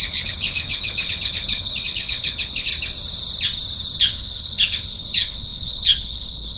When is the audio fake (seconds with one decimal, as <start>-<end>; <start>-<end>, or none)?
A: 0.0-2.7; 4.0-6.6